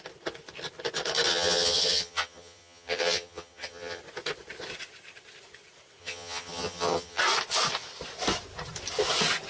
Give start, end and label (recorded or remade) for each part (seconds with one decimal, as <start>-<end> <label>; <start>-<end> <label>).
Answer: 0.0-1.3 recorded; 1.3-4.0 remade; 4.0-6.0 recorded; 6.0-7.2 remade; 7.2-9.5 recorded